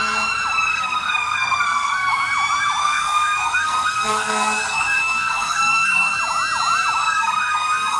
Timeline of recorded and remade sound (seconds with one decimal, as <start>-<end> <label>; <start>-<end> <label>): 0.0-0.7 recorded; 0.7-2.1 remade; 2.1-2.8 recorded; 2.8-6.2 remade; 6.2-7.0 recorded; 7.0-8.0 remade